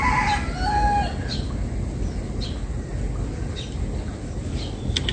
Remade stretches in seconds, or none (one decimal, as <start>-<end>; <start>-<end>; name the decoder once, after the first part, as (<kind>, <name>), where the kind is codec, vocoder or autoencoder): none

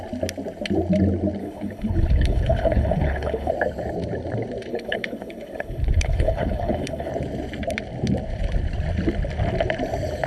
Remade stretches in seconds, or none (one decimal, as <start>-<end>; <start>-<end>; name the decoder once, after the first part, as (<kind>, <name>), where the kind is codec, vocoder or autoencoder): 1.4-3.5 (codec, HILCodec); 4.7-7.1

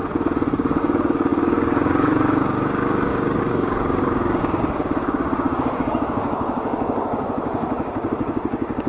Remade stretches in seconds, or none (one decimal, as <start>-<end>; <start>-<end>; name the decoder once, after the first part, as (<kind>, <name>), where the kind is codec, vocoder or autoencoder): 0.8-8.9 (codec, DAC)

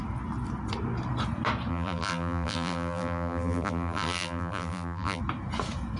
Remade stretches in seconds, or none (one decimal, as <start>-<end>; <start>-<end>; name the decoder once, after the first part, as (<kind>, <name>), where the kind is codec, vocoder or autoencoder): 1.7-5.2 (vocoder, BigVGAN v2)

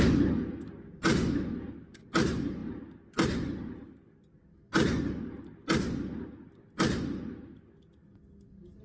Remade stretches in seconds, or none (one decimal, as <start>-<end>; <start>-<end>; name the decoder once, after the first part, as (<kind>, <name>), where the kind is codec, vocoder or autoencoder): none

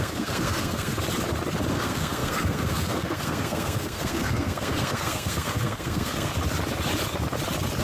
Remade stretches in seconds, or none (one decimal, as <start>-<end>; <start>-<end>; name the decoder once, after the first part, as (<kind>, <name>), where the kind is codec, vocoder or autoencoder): 0.0-0.9 (codec, SNAC); 1.7-6.3

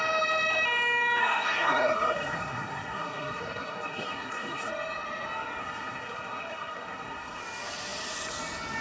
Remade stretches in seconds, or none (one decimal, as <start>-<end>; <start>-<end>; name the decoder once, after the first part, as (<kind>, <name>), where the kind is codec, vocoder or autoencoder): 1.2-4.7 (codec, SNAC); 5.6-7.4

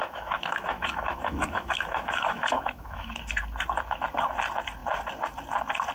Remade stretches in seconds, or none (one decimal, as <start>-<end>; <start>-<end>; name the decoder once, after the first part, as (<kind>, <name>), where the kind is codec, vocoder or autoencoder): 0.0-3.1 (autoencoder, DAC-VAE)